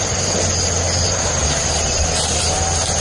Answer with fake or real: real